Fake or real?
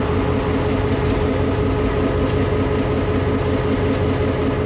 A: real